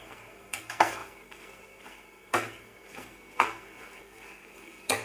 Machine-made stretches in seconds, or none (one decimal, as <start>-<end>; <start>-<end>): 0.0-5.0